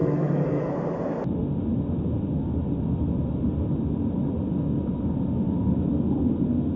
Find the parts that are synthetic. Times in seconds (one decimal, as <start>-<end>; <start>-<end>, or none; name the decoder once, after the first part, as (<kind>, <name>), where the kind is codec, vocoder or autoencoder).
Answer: 0.0-0.7 (codec, SNAC)